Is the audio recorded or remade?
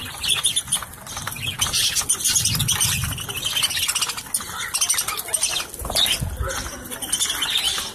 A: recorded